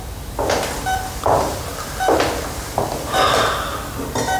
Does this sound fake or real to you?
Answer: real